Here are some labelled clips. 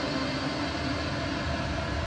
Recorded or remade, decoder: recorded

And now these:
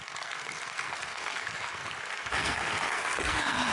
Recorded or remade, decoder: remade, codec, SNAC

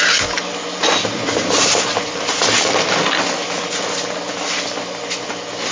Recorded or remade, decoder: recorded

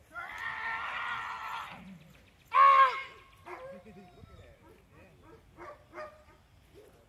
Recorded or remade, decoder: recorded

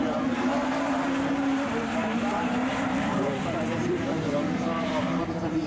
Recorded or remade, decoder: remade, vocoder, BigVGAN v2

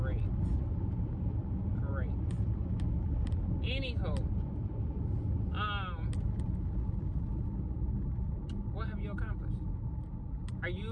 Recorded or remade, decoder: recorded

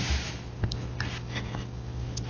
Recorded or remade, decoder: recorded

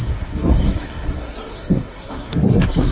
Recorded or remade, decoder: remade, codec, SNAC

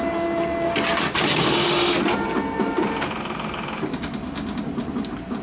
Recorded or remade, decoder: recorded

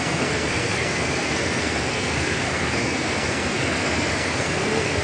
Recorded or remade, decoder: remade, codec, SNAC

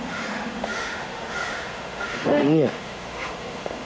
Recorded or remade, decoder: remade, autoencoder, DAC-VAE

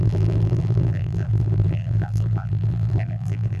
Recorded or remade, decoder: remade, vocoder, BigVGAN v2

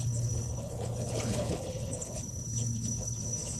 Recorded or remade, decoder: remade, codec, HILCodec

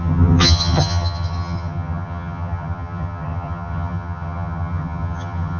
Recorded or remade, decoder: remade, vocoder, HiFi-GAN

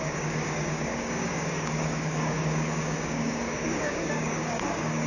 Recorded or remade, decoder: remade, codec, DAC